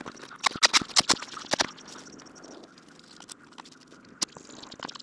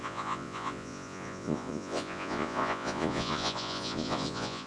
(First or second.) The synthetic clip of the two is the second